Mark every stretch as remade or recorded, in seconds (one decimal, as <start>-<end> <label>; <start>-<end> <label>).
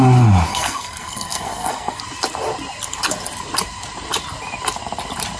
0.0-0.5 recorded; 0.5-2.0 remade; 2.0-5.4 recorded